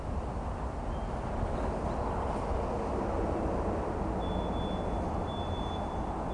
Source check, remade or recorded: recorded